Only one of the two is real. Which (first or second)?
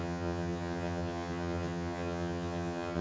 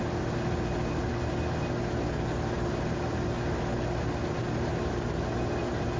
second